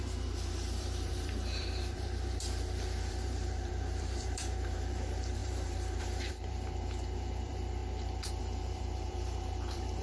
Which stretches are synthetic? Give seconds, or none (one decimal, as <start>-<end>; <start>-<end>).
0.0-7.8; 8.4-10.0